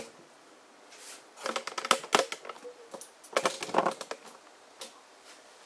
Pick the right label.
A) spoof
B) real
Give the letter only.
B